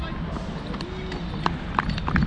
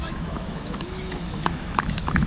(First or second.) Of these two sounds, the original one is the first